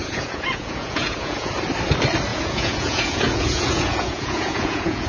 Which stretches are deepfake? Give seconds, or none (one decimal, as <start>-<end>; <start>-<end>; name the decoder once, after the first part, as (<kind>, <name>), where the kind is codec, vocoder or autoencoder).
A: 0.0-1.5 (vocoder, Vocos); 2.3-5.1